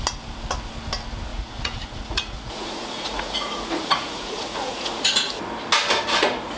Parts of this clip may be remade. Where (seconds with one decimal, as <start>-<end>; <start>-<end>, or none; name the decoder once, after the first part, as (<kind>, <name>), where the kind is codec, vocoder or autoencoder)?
1.3-5.3 (vocoder, Vocos)